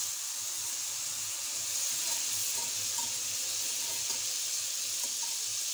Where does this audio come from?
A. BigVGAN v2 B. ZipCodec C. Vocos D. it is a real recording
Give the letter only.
D